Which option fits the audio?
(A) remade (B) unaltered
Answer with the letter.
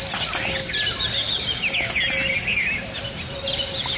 B